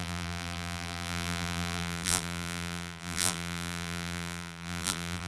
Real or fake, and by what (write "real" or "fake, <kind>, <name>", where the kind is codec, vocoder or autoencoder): fake, vocoder, BigVGAN v2